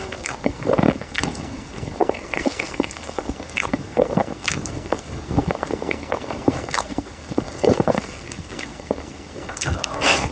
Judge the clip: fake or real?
fake